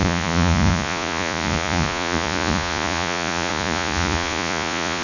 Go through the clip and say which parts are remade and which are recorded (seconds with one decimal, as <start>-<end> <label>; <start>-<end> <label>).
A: 0.0-5.0 remade